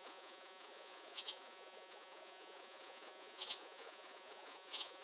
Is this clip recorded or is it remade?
remade